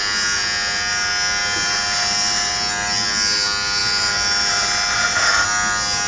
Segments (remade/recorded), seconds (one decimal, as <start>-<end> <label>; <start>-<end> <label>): 0.0-6.1 recorded